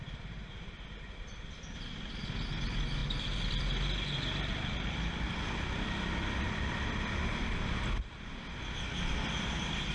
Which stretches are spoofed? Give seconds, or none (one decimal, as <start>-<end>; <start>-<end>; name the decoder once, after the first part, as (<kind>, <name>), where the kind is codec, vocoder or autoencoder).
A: 3.0-7.2 (vocoder, BigVGAN v2)